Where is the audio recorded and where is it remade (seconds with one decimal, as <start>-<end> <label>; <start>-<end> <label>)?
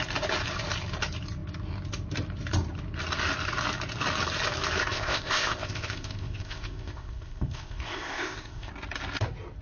0.0-4.8 recorded; 4.8-8.7 remade; 8.7-9.6 recorded